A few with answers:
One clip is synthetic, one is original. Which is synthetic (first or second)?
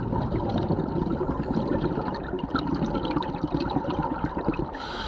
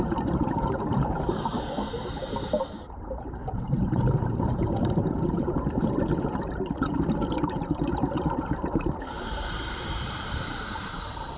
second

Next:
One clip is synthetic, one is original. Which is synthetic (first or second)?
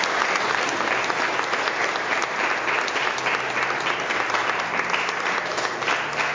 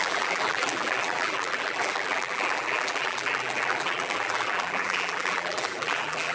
second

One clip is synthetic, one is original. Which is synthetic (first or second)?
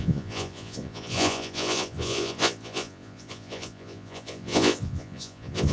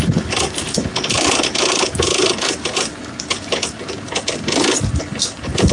first